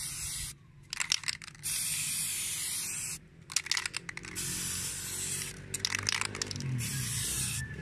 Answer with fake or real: real